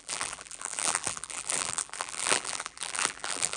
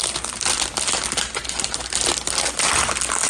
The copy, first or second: first